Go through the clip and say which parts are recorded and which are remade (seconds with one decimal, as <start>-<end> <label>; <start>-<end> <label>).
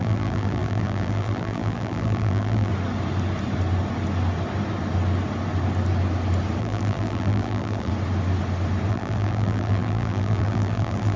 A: 0.0-2.7 remade; 2.7-6.6 recorded; 6.6-7.9 remade; 7.9-8.9 recorded; 8.9-11.2 remade